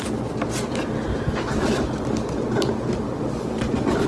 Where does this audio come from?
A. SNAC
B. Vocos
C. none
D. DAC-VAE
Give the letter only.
C